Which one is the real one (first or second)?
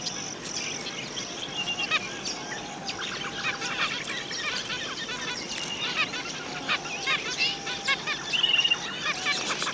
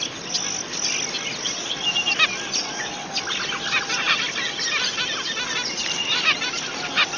second